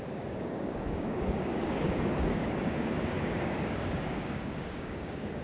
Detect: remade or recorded remade